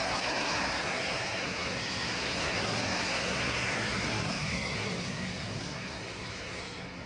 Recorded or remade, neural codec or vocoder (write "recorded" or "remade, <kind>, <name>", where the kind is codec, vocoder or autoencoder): remade, codec, SNAC